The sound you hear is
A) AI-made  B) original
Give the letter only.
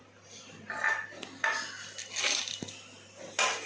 B